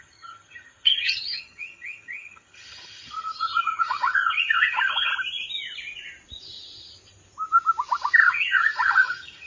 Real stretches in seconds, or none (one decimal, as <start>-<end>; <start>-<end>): 5.1-8.3